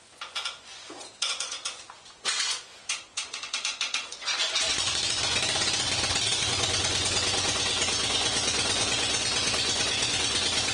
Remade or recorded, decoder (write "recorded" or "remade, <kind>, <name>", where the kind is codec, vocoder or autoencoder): remade, vocoder, Vocos